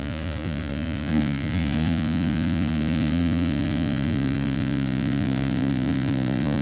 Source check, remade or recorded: remade